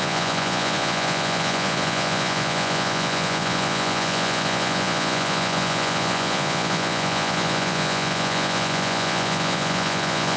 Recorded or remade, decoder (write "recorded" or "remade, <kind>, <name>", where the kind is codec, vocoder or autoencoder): remade, vocoder, Vocos